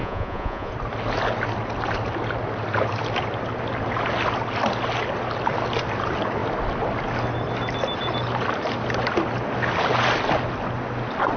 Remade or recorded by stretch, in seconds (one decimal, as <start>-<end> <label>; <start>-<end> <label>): 0.0-0.7 remade; 0.7-11.4 recorded